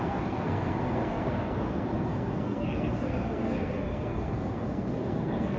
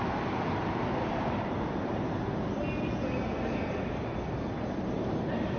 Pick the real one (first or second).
second